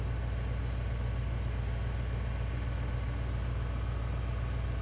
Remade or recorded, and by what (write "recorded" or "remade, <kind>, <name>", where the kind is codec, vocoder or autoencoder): recorded